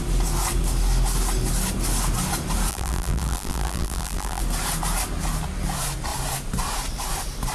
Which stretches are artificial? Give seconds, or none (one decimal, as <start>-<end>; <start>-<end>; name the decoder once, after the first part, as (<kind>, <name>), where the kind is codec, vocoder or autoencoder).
2.7-4.4 (vocoder, BigVGAN v2)